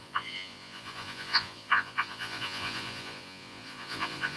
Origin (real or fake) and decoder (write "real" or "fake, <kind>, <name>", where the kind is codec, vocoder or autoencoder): fake, vocoder, Vocos